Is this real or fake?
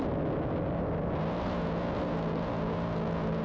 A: real